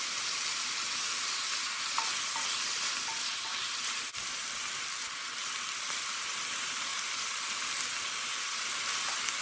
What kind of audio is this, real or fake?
real